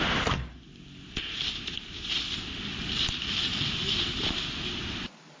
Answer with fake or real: real